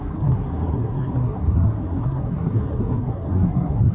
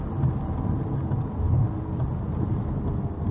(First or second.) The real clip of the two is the second